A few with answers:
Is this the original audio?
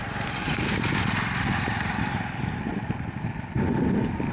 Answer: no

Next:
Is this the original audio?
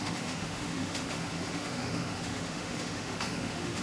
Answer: no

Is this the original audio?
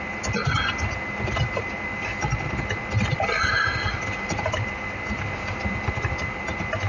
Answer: yes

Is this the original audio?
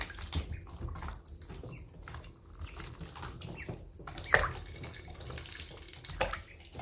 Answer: yes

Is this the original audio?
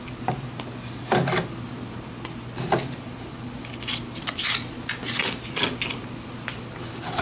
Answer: yes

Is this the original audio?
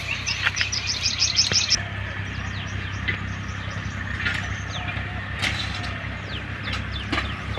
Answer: yes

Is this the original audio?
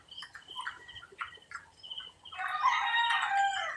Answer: yes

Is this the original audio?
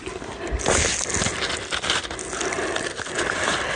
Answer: yes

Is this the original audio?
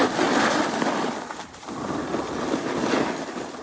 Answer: yes